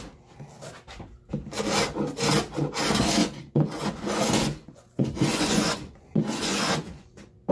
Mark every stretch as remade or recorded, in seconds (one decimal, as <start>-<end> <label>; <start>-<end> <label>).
0.0-3.2 recorded; 3.2-7.5 remade